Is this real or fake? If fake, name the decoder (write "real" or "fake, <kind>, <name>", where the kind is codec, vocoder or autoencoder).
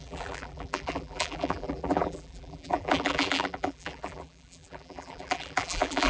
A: fake, vocoder, BigVGAN v2